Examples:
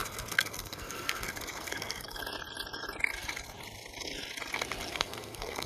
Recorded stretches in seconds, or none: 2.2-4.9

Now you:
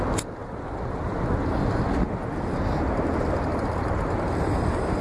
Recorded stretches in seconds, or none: 0.0-3.5; 4.1-5.0

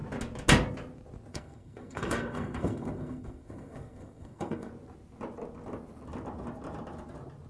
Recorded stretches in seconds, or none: 0.0-1.3; 4.7-7.5

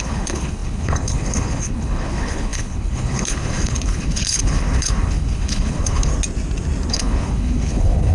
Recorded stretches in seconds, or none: 6.1-6.9

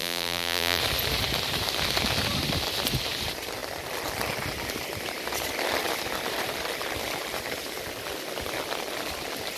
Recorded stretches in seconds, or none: 0.8-9.6

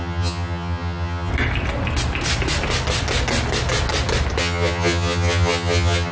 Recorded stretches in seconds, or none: 1.3-4.4

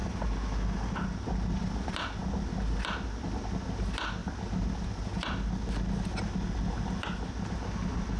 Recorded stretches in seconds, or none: 0.0-8.2

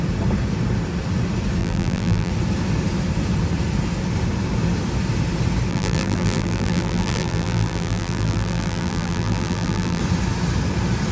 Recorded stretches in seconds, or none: 0.0-1.6; 2.3-5.7; 10.0-11.1